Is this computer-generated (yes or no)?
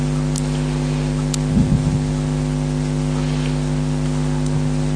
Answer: no